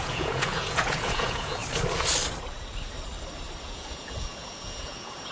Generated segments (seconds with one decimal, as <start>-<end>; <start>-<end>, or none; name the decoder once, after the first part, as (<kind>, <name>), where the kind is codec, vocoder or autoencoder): 0.0-1.6 (vocoder, Vocos); 3.6-5.3